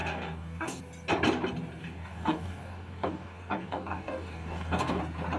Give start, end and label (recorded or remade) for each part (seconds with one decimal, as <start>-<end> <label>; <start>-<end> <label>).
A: 0.0-0.8 remade; 0.8-1.8 recorded; 1.8-5.0 remade; 5.0-5.4 recorded

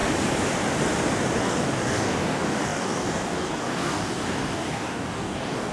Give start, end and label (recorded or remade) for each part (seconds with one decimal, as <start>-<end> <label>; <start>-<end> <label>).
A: 0.0-1.4 recorded; 1.4-5.7 remade